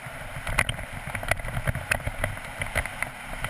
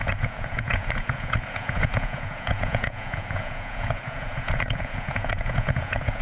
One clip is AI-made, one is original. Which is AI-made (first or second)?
second